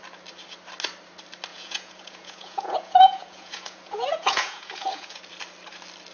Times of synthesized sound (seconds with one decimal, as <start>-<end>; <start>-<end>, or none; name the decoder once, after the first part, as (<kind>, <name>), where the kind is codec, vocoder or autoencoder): 1.5-5.2 (vocoder, Vocos)